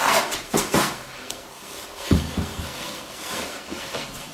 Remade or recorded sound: remade